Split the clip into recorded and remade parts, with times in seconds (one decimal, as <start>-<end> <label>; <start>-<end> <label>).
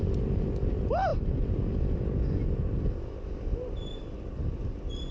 0.0-5.1 recorded